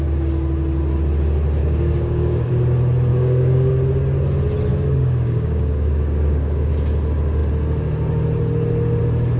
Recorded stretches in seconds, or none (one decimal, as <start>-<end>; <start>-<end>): 0.0-1.6; 2.5-3.1; 3.7-4.7; 6.7-9.4